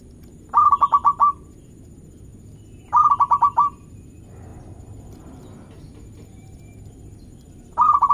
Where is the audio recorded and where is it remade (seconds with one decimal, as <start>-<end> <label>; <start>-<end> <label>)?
0.0-8.1 recorded